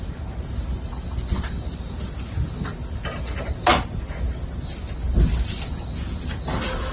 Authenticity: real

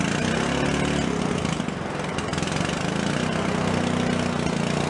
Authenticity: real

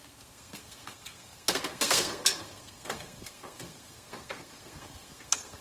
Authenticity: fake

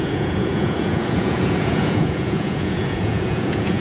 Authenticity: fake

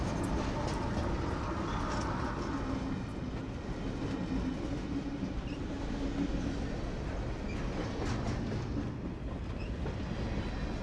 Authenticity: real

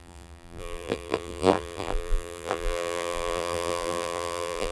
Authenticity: fake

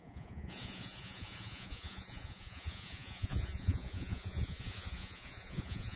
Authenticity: fake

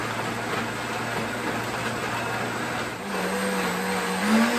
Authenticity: real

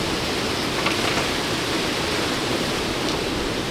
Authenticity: real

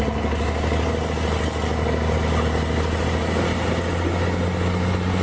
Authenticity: real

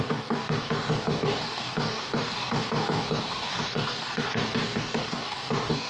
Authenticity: fake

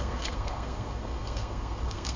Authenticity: fake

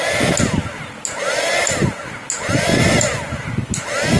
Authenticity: real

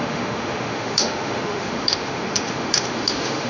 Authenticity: fake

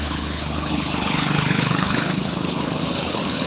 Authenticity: fake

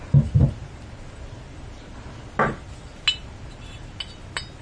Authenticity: real